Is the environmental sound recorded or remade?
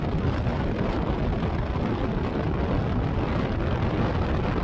recorded